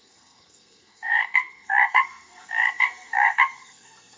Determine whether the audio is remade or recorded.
remade